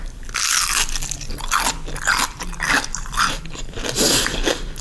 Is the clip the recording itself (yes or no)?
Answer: yes